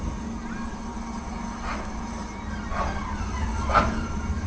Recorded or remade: recorded